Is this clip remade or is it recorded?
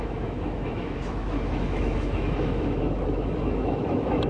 remade